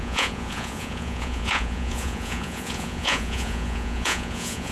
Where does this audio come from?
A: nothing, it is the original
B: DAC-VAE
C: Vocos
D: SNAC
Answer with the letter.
C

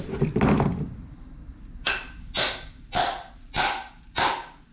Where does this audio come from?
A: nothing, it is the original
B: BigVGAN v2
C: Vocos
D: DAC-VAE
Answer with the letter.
A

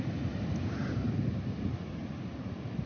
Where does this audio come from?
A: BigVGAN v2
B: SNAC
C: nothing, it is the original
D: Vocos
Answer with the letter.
C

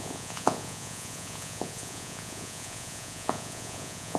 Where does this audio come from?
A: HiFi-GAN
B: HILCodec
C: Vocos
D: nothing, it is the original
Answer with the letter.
C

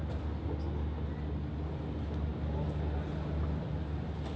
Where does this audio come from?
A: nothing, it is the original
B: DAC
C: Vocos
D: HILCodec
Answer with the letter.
A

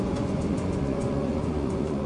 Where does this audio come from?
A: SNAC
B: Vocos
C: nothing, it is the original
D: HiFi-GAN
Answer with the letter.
B